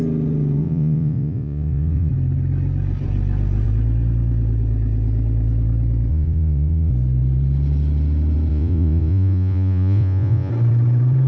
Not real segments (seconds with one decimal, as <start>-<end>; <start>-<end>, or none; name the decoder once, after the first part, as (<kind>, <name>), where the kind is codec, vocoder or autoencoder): 0.6-2.1 (vocoder, Vocos); 6.1-6.9; 8.5-10.5